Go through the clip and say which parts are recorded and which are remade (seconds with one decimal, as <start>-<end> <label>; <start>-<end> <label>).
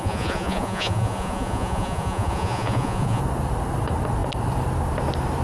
0.0-3.2 remade; 3.2-5.4 recorded